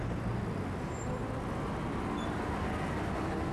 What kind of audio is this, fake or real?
real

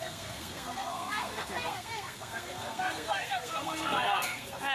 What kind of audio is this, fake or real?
fake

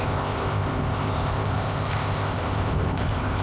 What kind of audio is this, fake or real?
fake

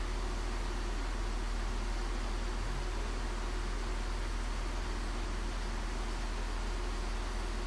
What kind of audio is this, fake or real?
real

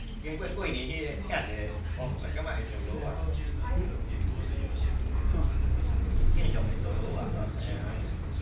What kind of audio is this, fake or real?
real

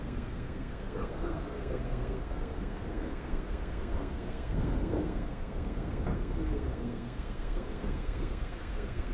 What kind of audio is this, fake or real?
fake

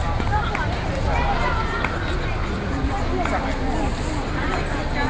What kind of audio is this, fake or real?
real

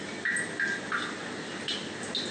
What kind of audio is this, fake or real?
real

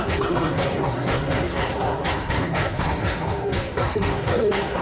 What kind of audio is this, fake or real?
fake